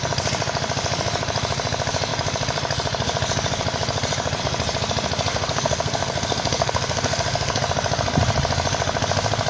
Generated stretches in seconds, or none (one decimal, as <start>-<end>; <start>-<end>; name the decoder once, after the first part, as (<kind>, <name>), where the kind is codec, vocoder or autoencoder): 5.3-7.6 (codec, SNAC)